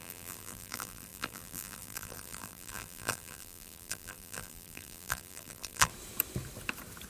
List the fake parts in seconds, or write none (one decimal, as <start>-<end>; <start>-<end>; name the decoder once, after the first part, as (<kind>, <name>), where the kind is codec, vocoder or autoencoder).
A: 0.0-5.9 (vocoder, BigVGAN v2)